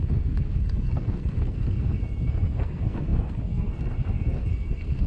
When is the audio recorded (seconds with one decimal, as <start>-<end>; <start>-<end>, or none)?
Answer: none